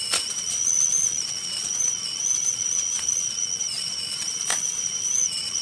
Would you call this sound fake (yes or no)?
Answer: yes